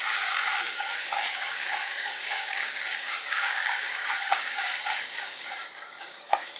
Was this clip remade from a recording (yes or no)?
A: yes